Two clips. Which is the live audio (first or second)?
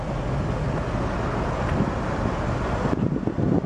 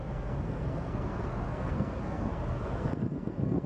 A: first